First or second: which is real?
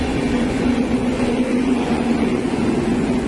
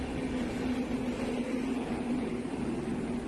second